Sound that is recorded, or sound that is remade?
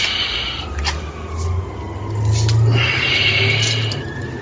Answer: recorded